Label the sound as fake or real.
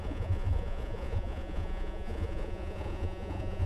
fake